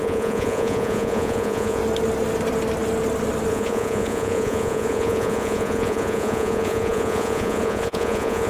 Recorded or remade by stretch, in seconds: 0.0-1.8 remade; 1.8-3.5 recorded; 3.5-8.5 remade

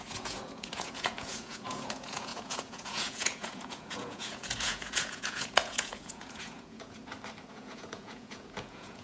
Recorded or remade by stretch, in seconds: 0.0-7.0 remade; 7.0-7.5 recorded; 7.5-9.0 remade